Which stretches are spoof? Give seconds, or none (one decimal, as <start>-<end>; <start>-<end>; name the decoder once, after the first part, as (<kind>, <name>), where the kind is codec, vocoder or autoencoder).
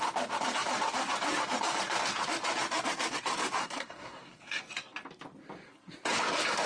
3.6-4.6 (codec, SNAC)